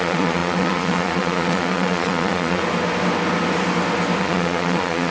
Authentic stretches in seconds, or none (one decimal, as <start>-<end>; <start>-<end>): 2.6-4.2